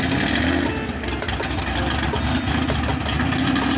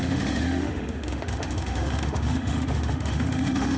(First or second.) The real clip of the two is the first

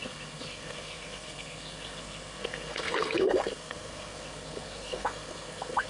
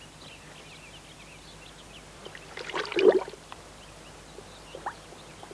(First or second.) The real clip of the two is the second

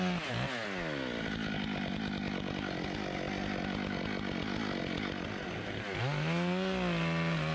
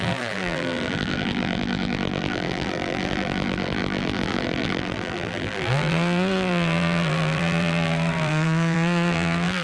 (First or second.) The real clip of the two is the first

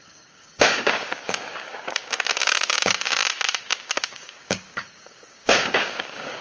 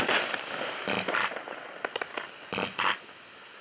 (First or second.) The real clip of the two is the second